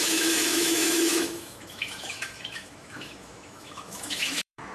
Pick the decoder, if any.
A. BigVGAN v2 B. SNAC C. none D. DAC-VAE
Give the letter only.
D